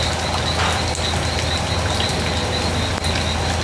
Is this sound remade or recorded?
recorded